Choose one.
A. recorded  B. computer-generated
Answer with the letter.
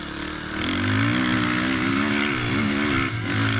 A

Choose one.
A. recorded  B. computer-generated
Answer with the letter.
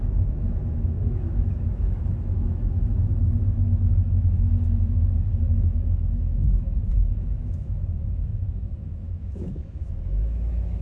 B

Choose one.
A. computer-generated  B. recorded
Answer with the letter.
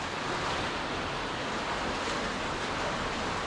B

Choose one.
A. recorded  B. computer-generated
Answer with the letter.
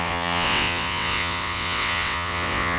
B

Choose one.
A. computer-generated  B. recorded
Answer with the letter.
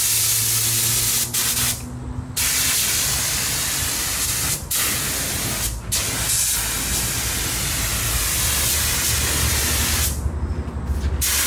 B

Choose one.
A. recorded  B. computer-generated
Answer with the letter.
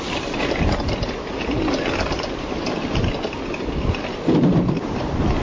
A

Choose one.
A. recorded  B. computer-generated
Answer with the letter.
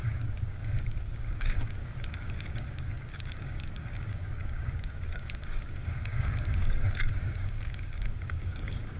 B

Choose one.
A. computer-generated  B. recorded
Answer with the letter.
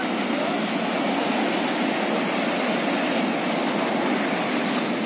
B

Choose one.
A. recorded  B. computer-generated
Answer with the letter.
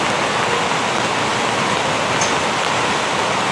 A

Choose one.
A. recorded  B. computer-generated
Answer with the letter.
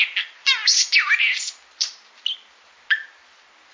A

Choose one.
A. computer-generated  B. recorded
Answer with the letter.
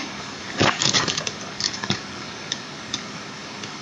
A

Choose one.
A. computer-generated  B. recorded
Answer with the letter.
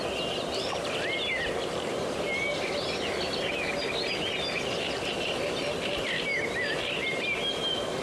B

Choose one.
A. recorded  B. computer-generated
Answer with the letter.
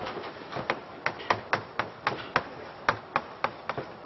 A